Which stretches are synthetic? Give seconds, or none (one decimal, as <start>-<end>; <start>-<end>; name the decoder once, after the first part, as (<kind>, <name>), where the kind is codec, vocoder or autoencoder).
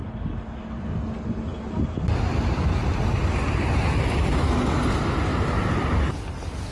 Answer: 5.3-6.2 (vocoder, BigVGAN v2)